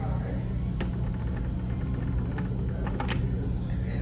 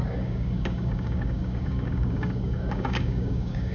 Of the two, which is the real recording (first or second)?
first